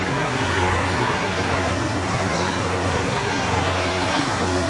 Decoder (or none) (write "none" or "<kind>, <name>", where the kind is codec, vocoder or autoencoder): codec, SNAC